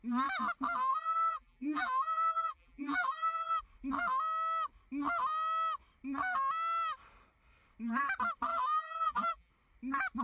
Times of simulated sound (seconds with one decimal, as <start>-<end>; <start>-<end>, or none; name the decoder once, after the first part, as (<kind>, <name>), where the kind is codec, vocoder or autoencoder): 0.9-3.6 (vocoder, BigVGAN v2); 8.5-9.5